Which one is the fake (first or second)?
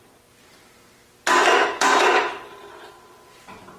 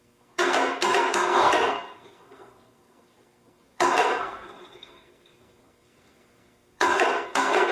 second